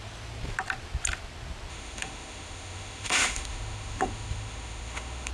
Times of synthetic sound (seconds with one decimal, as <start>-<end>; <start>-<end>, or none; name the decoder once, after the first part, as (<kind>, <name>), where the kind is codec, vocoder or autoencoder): 1.7-5.3 (autoencoder, DAC-VAE)